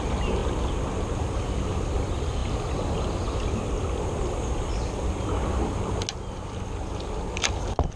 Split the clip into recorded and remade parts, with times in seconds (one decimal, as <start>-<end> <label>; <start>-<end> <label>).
0.0-8.0 recorded